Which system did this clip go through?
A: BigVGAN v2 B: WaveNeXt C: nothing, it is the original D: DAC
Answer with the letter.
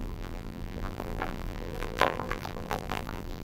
A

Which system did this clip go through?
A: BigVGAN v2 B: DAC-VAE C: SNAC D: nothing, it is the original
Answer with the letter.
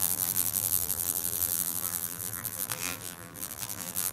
A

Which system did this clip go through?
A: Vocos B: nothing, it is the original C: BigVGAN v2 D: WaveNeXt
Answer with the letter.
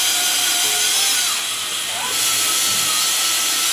B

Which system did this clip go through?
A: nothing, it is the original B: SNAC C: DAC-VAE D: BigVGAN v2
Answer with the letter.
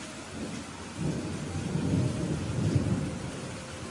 A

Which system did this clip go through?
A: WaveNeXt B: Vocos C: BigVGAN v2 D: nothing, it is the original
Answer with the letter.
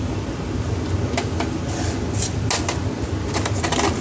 D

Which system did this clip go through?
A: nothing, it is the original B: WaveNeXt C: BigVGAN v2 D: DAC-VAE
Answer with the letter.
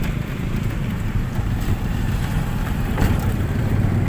C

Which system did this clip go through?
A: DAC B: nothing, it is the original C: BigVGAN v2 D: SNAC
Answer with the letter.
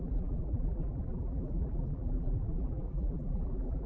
C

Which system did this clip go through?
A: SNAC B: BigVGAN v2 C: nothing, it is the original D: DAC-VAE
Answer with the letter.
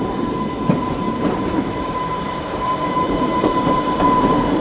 B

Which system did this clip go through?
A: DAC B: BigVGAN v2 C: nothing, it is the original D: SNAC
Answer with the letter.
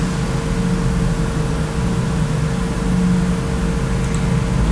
C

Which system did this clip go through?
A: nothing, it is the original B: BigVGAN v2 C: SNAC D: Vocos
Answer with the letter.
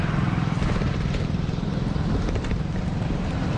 B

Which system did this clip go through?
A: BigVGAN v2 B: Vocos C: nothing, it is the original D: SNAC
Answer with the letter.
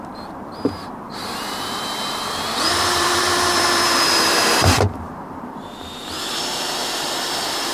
A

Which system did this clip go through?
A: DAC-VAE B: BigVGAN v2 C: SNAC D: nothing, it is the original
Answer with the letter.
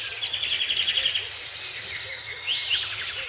D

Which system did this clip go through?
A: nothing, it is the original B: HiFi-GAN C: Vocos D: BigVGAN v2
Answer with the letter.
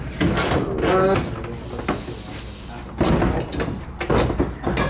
A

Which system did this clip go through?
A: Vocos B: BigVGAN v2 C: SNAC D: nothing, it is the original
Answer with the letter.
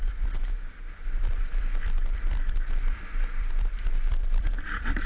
B